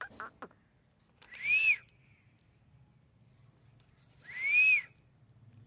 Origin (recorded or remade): recorded